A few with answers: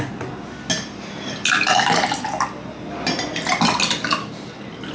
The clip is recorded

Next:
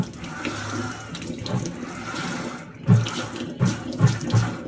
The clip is recorded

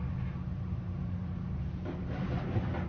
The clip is recorded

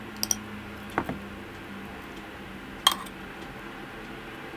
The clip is recorded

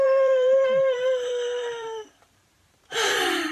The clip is remade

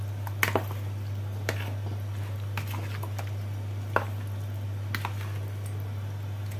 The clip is recorded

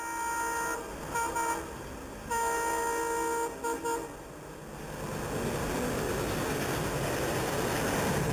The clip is recorded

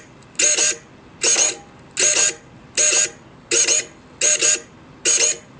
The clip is recorded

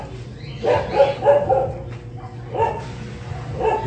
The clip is recorded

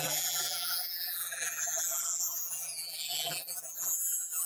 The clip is remade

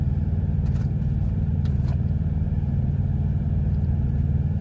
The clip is remade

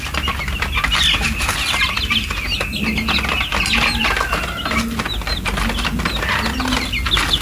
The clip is recorded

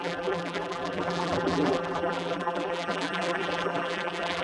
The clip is remade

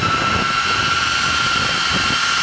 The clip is recorded